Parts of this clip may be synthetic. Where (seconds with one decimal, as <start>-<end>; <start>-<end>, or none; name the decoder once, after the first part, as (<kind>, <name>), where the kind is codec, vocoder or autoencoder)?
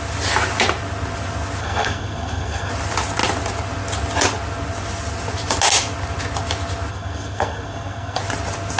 1.6-2.7 (codec, SNAC); 6.9-8.2